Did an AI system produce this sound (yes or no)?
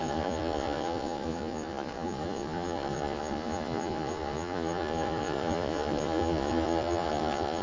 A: yes